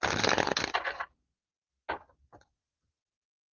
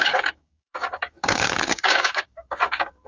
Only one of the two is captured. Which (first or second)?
first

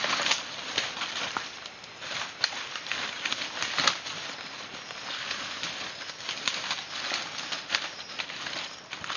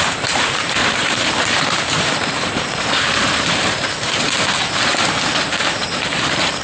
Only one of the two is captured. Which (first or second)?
first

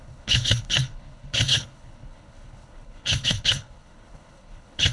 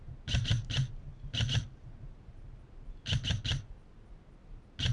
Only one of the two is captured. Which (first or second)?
second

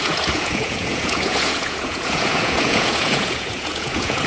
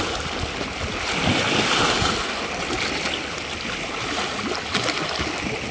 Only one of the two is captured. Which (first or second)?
second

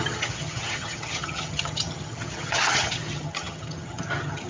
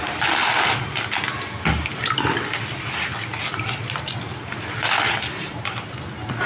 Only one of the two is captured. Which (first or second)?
second